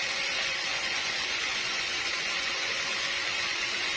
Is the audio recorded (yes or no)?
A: no